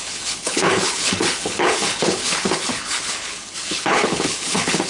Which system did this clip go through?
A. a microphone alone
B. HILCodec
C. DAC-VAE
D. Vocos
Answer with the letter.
B